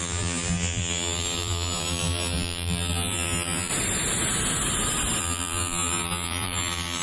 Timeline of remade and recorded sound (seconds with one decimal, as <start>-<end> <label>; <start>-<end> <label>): 0.0-3.7 remade; 3.7-5.2 recorded; 5.2-7.0 remade